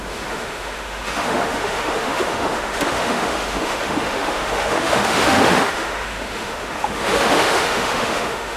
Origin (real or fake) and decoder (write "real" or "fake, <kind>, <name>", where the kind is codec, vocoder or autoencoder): fake, autoencoder, DAC-VAE